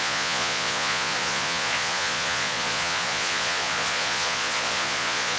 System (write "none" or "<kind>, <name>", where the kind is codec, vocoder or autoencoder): vocoder, Vocos